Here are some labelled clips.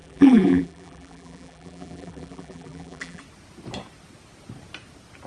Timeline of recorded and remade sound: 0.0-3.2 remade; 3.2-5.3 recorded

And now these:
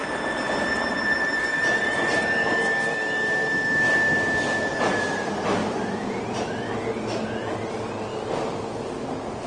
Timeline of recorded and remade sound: 0.0-5.6 recorded; 5.6-6.3 remade; 6.3-9.5 recorded

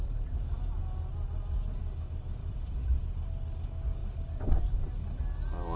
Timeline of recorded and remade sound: 0.0-0.8 remade; 0.8-2.4 recorded; 2.4-3.0 remade; 3.0-4.0 recorded; 4.0-4.9 remade; 4.9-5.8 recorded

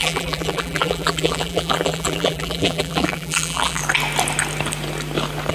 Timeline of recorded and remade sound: 0.0-3.8 remade; 3.8-5.5 recorded

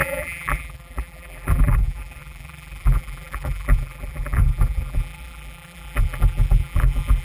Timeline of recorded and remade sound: 0.0-7.2 remade

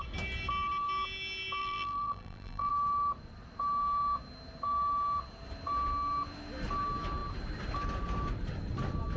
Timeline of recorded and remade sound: 0.0-1.6 recorded; 1.6-2.7 remade; 2.7-9.2 recorded

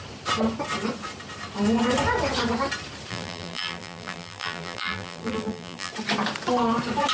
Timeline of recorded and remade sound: 0.0-3.1 recorded; 3.1-5.9 remade; 5.9-7.1 recorded

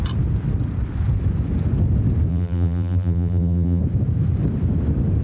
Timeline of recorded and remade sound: 0.0-2.3 recorded; 2.3-3.8 remade; 3.8-5.2 recorded